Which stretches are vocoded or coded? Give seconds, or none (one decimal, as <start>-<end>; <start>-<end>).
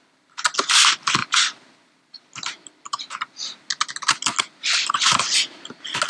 none